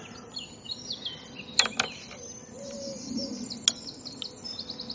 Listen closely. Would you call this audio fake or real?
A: real